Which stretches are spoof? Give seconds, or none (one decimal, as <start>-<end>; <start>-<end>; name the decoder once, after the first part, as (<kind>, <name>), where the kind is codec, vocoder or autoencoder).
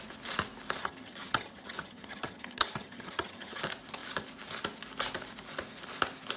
0.8-3.6 (vocoder, HiFi-GAN)